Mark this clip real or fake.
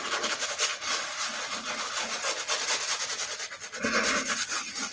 real